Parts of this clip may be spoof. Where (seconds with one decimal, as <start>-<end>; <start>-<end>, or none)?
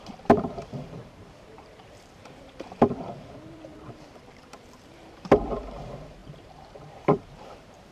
0.0-7.9